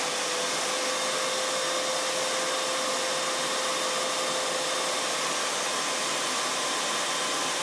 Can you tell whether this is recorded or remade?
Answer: recorded